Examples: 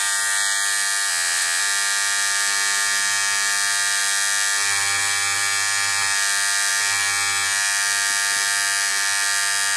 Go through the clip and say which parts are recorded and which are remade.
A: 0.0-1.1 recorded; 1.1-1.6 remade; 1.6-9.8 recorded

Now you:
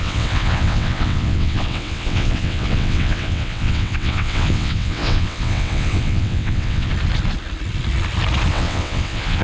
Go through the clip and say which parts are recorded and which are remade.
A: 0.0-6.9 remade; 6.9-8.5 recorded; 8.5-9.4 remade

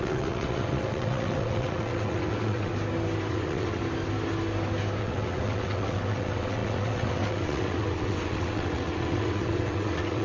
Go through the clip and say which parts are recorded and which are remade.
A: 0.0-2.7 remade; 2.7-3.3 recorded; 3.3-3.8 remade; 3.8-5.0 recorded; 5.0-10.2 remade

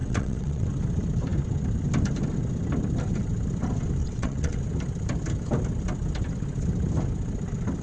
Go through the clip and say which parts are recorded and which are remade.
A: 0.0-0.7 remade; 0.7-4.0 recorded; 4.0-4.6 remade; 4.6-7.8 recorded